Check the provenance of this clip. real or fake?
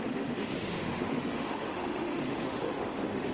fake